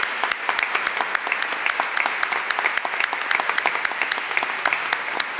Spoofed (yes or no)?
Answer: no